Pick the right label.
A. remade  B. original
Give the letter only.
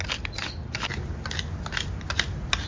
B